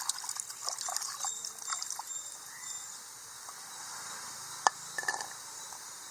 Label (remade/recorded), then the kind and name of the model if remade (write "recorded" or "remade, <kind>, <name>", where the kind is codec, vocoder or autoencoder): recorded